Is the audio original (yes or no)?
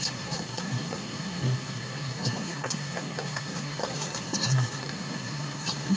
no